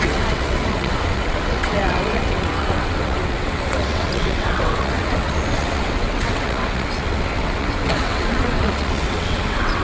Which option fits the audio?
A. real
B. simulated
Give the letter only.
B